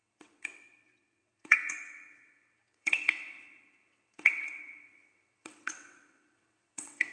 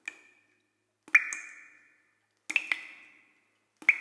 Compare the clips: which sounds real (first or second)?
second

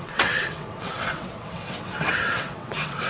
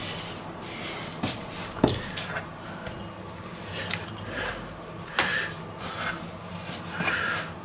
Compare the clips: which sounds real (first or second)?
second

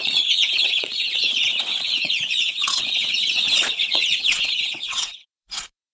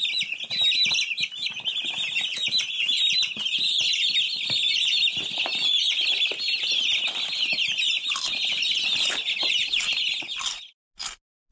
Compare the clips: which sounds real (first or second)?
second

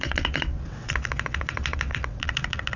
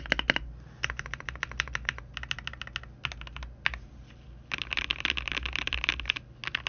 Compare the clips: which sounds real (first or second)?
second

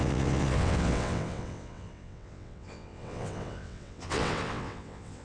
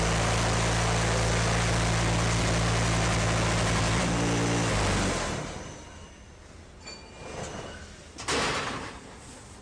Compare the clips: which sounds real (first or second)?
second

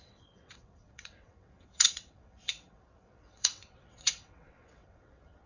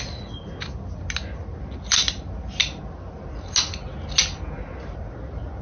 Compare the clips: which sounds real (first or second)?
second